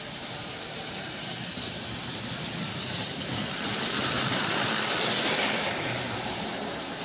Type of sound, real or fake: fake